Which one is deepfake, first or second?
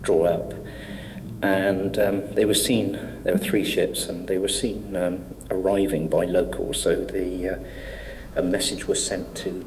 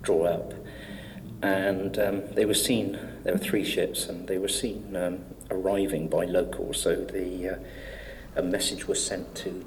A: first